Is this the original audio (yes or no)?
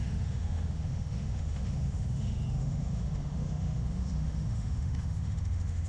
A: no